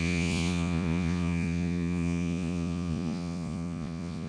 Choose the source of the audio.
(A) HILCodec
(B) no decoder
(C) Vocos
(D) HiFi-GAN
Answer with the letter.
C